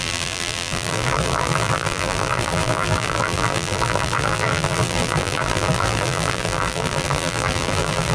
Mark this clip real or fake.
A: fake